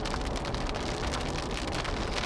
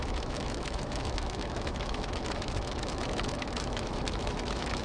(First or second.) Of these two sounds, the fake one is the second